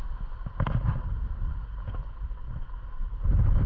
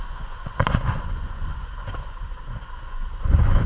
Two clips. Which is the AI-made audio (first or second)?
second